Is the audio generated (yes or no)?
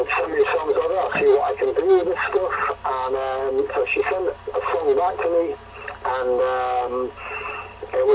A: no